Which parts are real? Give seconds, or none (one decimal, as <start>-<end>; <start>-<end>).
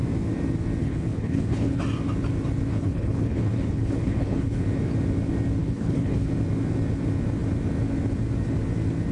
0.0-0.8; 1.8-2.7; 4.6-5.6; 6.3-9.1